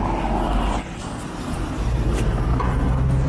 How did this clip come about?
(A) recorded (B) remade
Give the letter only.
A